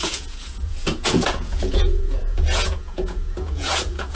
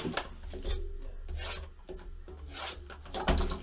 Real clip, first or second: second